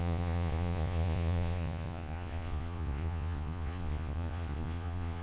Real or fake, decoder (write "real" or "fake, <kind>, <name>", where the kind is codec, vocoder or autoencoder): fake, vocoder, Vocos